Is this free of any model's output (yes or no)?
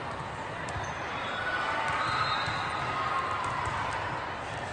yes